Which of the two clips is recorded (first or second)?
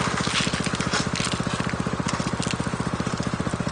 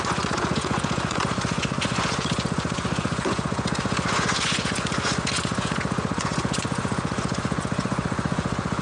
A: first